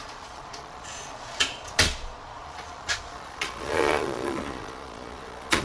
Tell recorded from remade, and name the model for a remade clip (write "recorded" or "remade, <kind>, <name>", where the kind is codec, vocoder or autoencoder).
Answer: remade, vocoder, Vocos